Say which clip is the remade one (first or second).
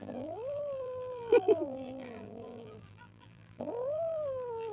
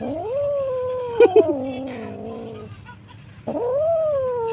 first